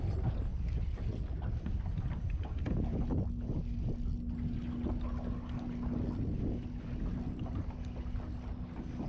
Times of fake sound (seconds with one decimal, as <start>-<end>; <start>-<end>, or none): none